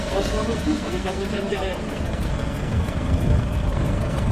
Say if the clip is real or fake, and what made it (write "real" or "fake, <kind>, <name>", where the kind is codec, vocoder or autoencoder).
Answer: fake, codec, SNAC